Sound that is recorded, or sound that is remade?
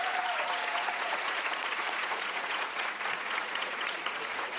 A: remade